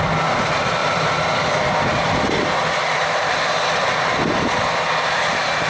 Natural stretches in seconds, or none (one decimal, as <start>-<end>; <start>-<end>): 0.0-5.7